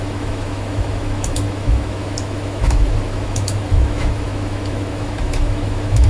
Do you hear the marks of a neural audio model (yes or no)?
yes